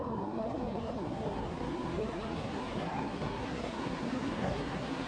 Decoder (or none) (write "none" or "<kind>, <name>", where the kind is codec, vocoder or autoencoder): codec, SNAC